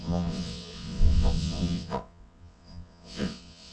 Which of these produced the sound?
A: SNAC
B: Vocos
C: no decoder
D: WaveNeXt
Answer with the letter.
D